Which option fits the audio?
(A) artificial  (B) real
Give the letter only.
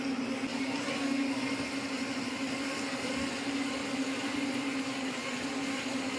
B